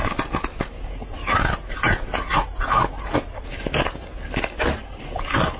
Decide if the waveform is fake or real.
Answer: real